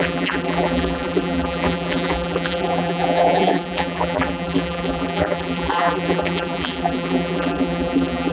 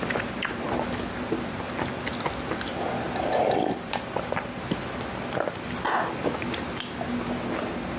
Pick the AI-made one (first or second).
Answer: first